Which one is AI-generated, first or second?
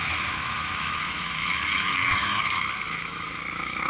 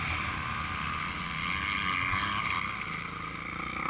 first